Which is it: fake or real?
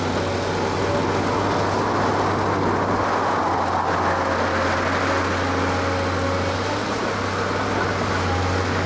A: real